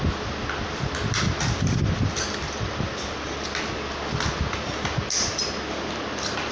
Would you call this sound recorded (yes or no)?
yes